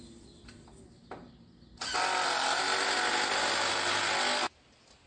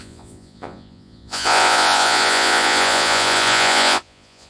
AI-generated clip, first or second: second